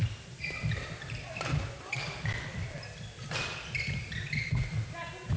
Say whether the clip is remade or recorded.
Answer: recorded